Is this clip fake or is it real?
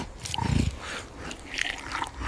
real